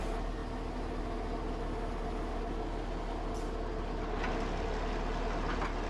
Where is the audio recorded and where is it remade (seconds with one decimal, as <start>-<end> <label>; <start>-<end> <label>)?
0.0-5.9 recorded